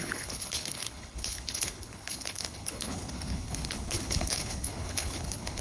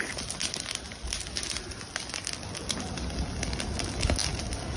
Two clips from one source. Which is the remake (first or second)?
first